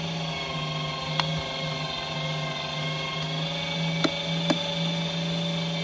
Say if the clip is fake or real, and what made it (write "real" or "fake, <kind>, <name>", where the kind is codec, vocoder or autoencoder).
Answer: real